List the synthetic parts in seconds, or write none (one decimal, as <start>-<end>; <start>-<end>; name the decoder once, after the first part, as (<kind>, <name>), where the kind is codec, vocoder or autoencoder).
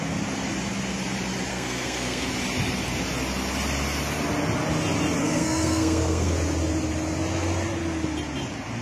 1.5-2.3 (codec, SNAC); 5.2-6.3